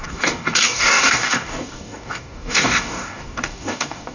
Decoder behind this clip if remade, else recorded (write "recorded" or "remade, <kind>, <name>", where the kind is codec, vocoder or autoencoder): remade, codec, DAC